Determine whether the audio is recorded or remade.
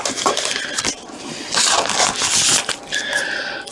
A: recorded